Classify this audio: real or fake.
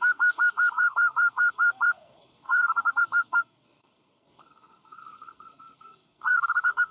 fake